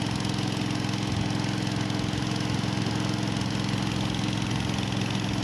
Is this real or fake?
real